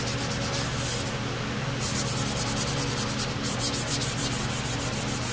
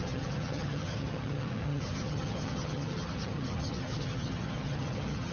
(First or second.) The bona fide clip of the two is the first